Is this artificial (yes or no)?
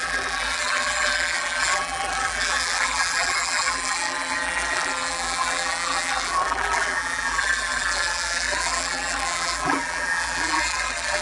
yes